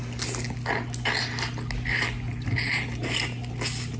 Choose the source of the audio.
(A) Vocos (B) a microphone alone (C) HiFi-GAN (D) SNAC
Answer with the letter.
B